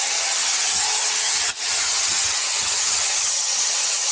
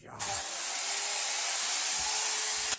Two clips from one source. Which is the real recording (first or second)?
second